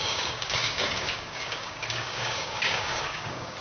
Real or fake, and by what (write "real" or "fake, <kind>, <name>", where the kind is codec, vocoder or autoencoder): fake, codec, DAC